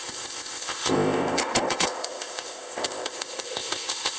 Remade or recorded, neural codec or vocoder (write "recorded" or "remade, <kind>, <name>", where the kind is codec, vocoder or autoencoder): remade, codec, ZipCodec